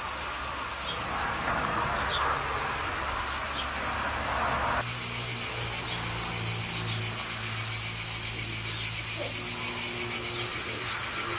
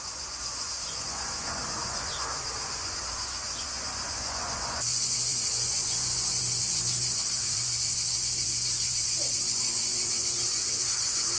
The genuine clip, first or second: first